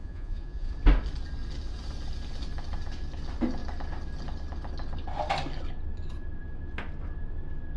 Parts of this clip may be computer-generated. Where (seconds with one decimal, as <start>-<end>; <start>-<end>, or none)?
0.0-0.7

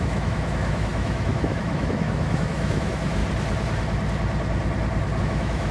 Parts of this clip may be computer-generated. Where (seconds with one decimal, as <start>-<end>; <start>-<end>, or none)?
0.0-3.2; 5.2-5.7

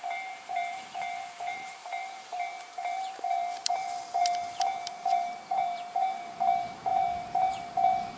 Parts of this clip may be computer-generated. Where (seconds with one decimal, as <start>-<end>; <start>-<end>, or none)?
0.0-8.2

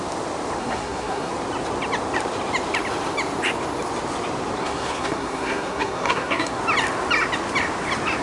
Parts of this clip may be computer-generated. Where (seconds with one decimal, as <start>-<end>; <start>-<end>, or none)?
0.6-1.3; 4.6-6.6

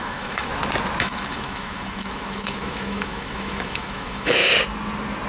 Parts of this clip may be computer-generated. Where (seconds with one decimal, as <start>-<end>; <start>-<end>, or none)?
0.0-0.5; 1.0-4.4

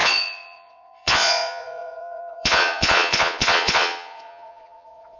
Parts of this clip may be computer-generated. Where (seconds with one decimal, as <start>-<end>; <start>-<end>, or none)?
0.0-5.2

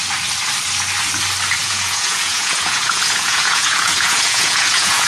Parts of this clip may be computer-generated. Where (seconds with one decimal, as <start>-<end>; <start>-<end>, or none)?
1.6-5.1